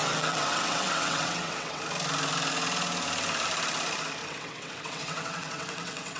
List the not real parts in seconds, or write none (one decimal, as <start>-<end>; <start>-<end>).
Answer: 0.0-1.8; 4.2-6.2